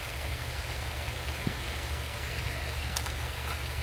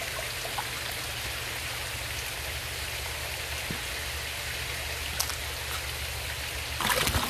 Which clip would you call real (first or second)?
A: second